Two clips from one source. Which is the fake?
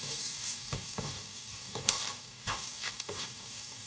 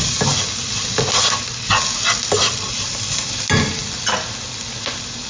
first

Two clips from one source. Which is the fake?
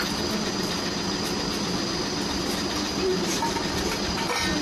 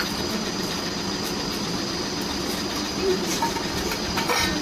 second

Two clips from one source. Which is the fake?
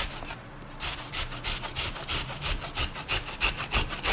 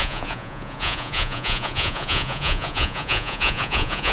second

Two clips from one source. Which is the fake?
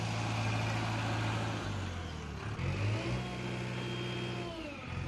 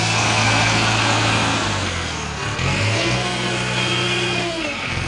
second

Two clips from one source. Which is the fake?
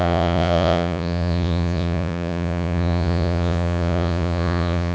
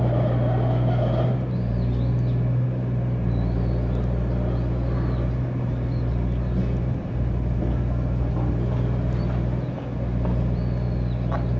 first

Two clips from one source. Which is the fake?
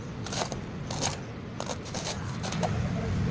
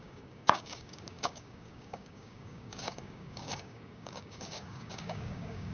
second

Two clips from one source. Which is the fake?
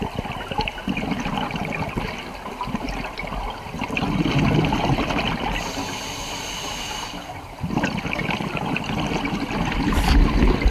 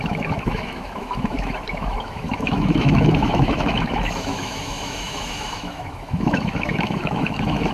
second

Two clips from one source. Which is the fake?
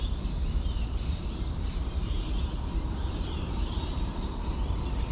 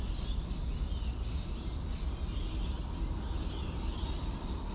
first